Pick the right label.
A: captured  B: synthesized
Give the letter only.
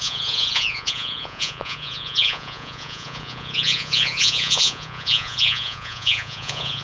B